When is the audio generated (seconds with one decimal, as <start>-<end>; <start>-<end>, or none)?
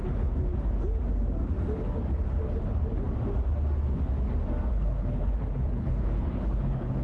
0.0-0.5; 4.7-7.0